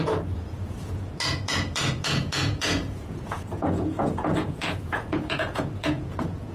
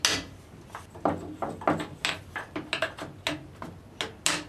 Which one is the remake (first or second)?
first